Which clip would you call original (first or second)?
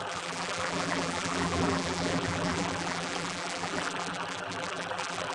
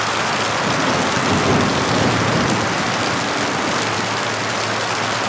second